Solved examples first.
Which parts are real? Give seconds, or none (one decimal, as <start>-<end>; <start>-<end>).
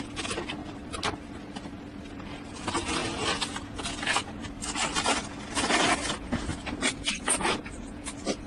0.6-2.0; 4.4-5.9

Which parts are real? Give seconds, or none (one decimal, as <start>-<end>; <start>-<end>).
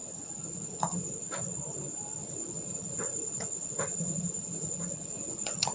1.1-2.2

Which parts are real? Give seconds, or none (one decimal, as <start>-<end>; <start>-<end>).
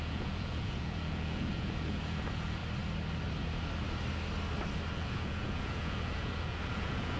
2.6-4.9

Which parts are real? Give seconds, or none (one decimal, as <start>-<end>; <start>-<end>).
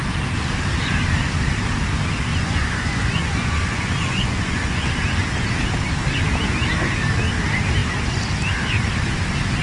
0.0-2.3; 4.9-9.6